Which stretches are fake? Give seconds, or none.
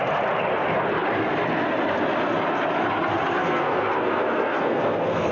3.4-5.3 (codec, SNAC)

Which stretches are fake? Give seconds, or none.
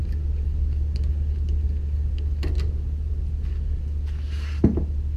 none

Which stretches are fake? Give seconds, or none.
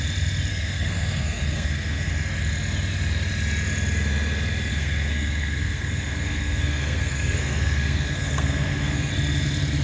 0.5-2.1 (codec, SNAC); 4.7-9.1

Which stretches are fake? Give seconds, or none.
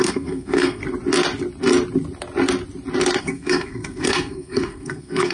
0.0-0.8 (codec, SNAC); 3.2-5.3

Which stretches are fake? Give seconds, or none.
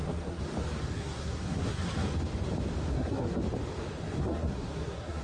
0.0-0.4 (codec, SNAC); 0.9-1.9; 2.9-3.4; 4.2-5.2